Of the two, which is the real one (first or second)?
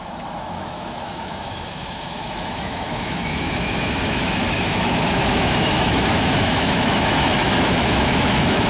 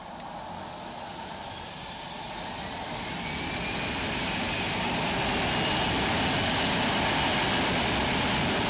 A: second